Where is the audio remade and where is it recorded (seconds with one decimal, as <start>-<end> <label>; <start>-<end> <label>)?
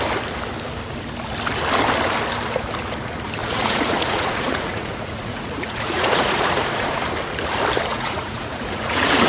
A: 0.0-3.4 recorded; 3.4-7.0 remade; 7.0-7.9 recorded; 7.9-9.3 remade